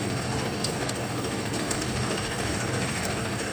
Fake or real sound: fake